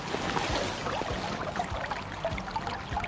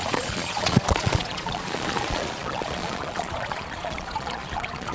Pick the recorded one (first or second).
first